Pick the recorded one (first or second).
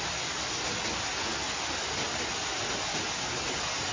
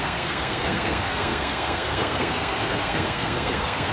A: first